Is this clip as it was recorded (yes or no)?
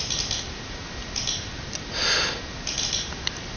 yes